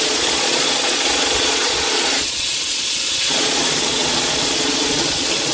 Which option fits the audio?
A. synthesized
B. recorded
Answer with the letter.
A